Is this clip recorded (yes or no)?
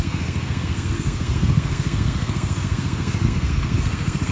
no